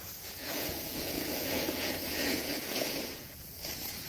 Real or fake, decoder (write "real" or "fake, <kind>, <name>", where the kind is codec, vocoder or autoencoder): fake, vocoder, Vocos